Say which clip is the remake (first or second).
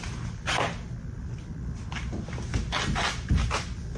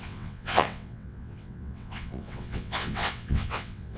second